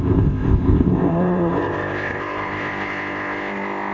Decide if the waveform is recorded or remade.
remade